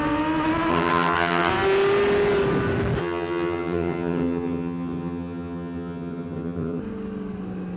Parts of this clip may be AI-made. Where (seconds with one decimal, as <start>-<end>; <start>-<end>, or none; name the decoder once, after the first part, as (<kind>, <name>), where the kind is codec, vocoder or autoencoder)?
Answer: 0.7-1.5 (vocoder, HiFi-GAN); 3.0-6.8